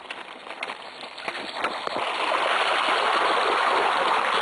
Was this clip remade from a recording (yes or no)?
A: no